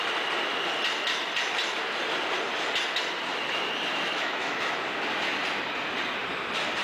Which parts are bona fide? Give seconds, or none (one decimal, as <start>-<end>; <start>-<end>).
0.0-3.9; 4.8-6.8